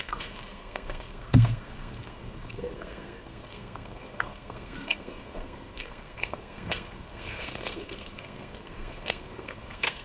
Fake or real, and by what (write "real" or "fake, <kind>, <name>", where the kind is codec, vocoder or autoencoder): fake, codec, SNAC